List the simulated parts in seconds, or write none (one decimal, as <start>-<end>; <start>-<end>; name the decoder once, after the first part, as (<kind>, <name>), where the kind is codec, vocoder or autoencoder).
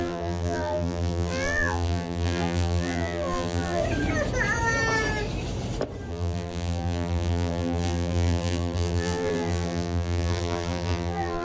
0.0-3.8 (vocoder, BigVGAN v2); 6.1-11.4